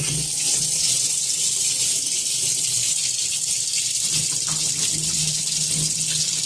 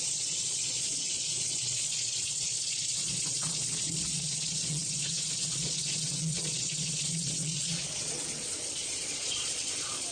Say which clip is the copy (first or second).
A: second